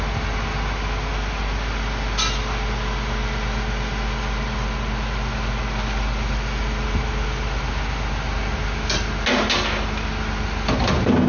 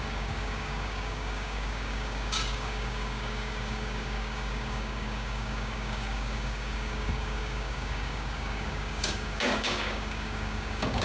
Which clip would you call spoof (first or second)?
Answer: second